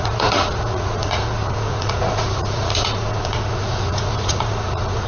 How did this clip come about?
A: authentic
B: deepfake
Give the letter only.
B